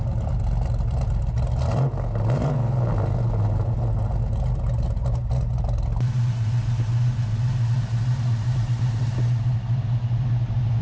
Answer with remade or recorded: recorded